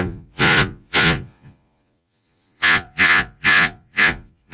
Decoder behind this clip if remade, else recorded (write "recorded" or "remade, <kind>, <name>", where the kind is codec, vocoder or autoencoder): remade, vocoder, Vocos